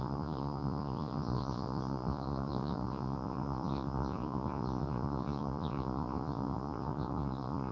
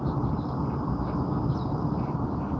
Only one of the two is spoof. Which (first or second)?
first